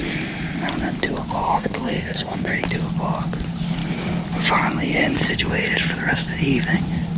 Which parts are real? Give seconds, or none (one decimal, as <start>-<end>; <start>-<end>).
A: 0.0-1.4; 2.5-7.2